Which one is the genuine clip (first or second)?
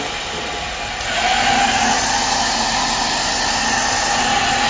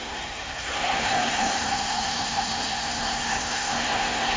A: first